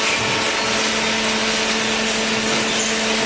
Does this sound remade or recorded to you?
recorded